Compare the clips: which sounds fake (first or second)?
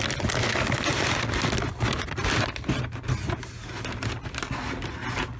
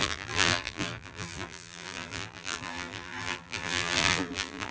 second